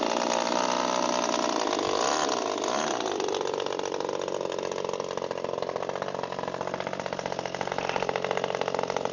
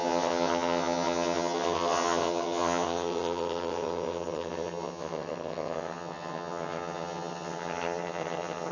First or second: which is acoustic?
first